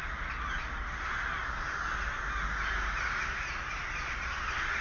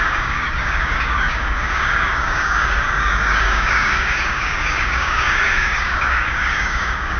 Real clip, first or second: first